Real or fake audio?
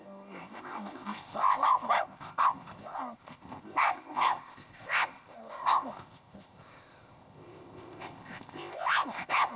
fake